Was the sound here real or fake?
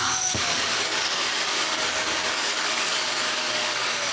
fake